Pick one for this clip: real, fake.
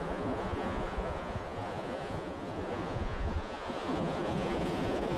fake